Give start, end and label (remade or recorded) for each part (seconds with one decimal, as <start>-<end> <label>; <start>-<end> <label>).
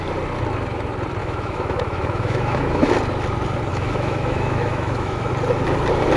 0.0-1.2 recorded; 1.2-2.9 remade; 2.9-3.7 recorded; 3.7-5.3 remade; 5.3-6.2 recorded